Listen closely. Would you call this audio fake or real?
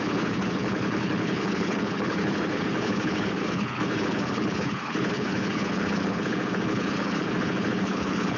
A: fake